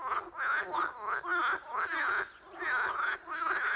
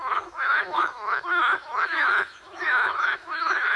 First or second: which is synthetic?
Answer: second